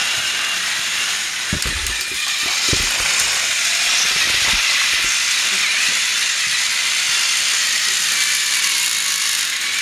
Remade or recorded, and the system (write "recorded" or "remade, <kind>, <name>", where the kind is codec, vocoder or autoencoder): recorded